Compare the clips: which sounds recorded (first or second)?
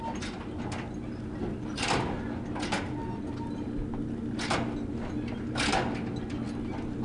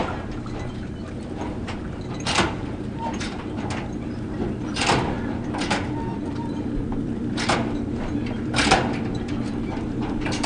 first